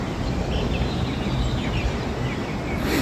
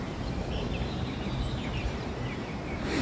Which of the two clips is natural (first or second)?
first